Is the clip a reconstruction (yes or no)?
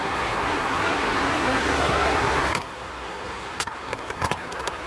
yes